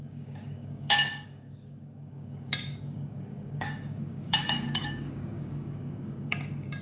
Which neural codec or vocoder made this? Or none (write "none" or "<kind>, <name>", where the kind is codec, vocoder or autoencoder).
codec, DAC